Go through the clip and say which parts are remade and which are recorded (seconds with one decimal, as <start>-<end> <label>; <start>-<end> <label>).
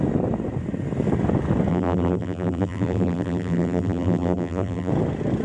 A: 0.0-1.7 recorded; 1.7-4.9 remade; 4.9-5.4 recorded